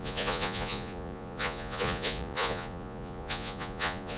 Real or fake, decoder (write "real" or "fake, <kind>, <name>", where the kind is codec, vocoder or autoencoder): fake, vocoder, Vocos